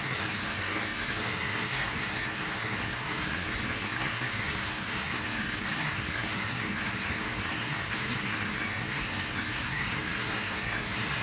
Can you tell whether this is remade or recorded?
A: remade